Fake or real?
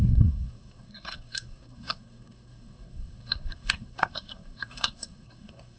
fake